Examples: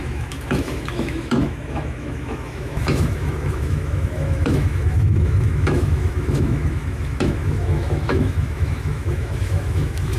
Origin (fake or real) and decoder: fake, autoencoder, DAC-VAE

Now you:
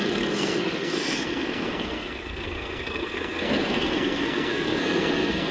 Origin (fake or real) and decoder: fake, codec, SNAC